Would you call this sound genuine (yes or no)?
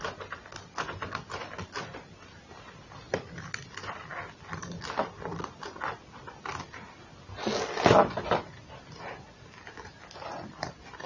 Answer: yes